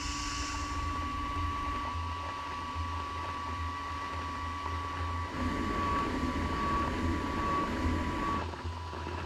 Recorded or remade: recorded